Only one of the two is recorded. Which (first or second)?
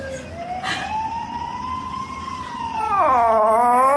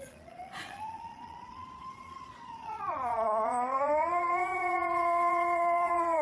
first